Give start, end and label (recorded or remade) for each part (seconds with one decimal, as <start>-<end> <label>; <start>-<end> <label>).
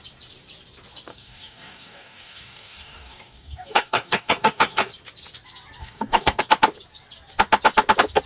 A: 0.0-1.1 recorded; 1.1-4.9 remade; 4.9-5.8 recorded; 5.8-6.4 remade; 6.4-8.3 recorded